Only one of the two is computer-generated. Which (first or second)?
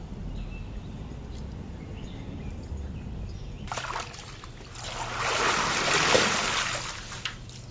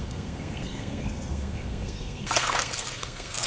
second